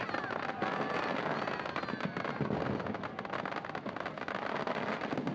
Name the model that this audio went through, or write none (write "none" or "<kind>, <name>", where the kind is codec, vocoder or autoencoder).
none